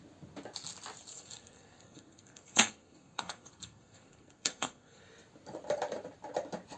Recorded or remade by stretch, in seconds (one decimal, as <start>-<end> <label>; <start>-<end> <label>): 0.0-1.1 recorded; 1.1-5.0 remade; 5.0-6.8 recorded